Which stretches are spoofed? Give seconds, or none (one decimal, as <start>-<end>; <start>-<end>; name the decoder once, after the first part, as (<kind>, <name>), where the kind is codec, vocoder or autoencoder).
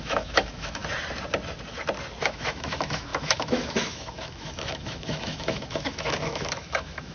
0.0-0.8 (autoencoder, DAC-VAE); 2.2-7.1